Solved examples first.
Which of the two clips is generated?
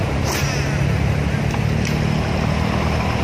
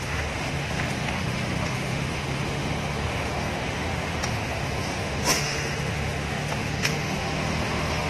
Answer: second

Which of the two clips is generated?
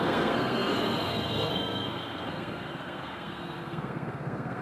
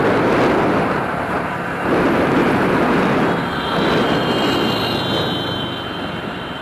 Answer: first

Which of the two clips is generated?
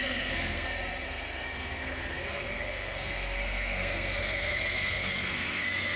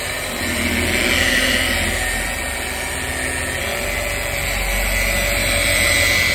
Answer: first